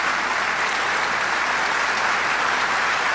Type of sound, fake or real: real